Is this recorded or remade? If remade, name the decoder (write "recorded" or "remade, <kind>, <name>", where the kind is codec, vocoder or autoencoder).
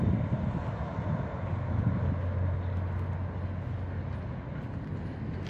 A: recorded